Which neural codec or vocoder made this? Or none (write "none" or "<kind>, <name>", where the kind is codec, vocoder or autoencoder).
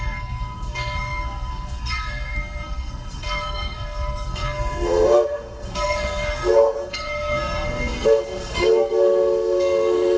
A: codec, SNAC